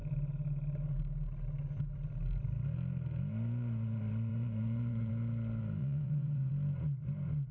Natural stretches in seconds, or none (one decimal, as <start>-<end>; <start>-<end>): 0.0-4.3; 5.1-5.8; 6.5-7.5